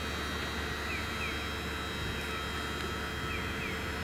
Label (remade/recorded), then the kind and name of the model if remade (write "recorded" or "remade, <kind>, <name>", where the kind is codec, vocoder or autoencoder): recorded